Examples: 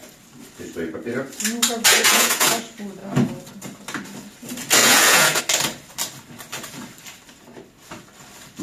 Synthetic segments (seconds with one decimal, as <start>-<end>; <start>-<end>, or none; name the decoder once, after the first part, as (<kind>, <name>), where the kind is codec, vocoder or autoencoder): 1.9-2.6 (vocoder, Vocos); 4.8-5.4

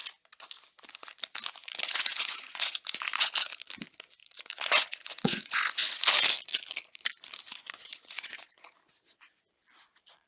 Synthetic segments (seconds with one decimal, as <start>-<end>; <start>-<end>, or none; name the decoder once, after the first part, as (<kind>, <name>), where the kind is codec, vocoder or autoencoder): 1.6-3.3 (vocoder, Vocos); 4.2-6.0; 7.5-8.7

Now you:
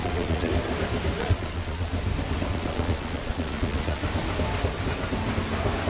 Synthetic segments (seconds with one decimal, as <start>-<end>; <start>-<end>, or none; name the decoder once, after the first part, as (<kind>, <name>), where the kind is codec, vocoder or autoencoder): 0.0-0.5 (vocoder, Vocos); 1.2-1.9; 2.5-4.0

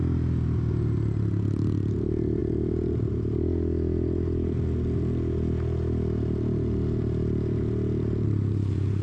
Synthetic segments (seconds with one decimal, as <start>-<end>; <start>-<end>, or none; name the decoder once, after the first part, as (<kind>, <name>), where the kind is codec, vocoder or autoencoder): none